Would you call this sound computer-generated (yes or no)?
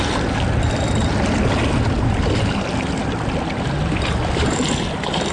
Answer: no